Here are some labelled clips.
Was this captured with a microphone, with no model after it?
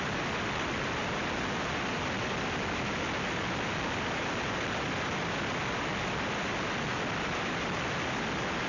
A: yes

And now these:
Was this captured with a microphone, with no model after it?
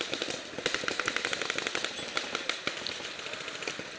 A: yes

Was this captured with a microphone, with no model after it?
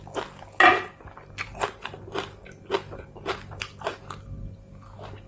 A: yes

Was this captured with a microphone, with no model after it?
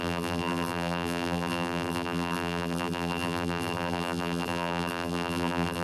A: no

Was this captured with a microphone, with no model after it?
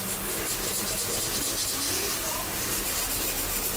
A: yes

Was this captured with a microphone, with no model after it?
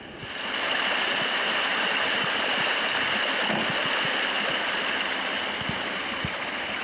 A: yes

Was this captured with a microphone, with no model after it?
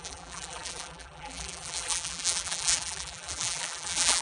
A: no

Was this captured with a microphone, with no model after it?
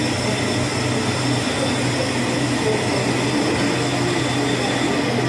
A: yes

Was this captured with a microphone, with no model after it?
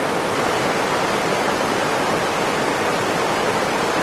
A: yes